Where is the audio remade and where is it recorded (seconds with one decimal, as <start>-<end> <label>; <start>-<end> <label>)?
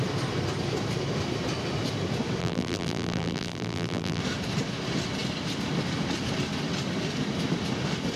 0.0-2.4 recorded; 2.4-4.2 remade; 4.2-8.2 recorded